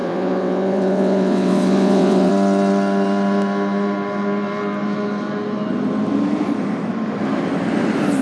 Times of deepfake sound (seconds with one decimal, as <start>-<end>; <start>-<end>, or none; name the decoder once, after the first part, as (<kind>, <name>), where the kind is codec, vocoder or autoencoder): 0.0-2.3 (vocoder, WaveNeXt)